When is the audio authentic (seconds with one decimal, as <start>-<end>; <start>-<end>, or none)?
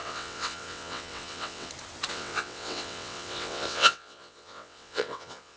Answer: 1.7-2.1